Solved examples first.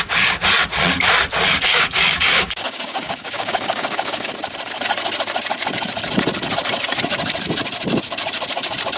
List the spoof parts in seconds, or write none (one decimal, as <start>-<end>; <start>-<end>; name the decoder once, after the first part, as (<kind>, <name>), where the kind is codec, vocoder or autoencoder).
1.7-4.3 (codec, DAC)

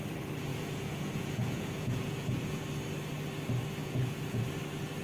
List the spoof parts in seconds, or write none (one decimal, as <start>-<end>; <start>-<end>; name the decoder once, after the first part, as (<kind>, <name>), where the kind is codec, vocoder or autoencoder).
0.5-2.6 (vocoder, Vocos); 3.8-4.4

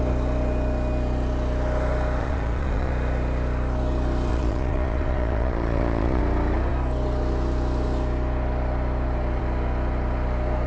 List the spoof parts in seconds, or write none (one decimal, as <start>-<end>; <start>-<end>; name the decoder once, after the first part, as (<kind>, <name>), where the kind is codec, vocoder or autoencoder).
2.2-2.9 (vocoder, Vocos); 4.3-6.2

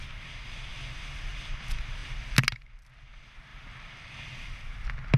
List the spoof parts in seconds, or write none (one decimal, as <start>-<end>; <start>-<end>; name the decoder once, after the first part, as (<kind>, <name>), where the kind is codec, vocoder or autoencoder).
none

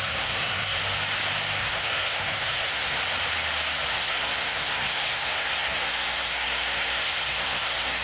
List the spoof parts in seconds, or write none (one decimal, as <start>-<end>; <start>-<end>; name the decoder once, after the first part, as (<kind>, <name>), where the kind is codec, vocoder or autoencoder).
0.0-0.8 (codec, SNAC); 1.6-3.0; 3.9-8.0

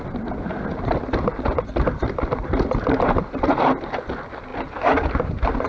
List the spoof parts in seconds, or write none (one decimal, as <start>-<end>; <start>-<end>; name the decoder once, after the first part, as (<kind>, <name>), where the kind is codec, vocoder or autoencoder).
0.7-4.1 (vocoder, BigVGAN v2)